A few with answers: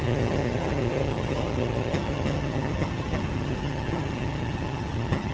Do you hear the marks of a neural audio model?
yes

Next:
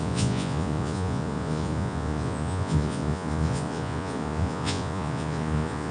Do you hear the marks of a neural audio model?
yes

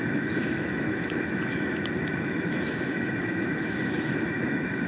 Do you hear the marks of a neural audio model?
yes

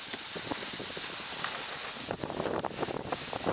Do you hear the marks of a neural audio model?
no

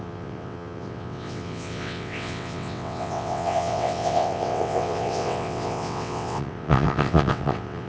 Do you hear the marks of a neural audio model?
yes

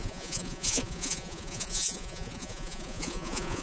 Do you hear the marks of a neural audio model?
yes